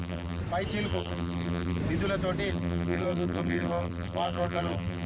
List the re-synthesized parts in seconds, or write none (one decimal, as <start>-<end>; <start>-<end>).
0.0-0.4; 0.9-1.8; 2.5-5.1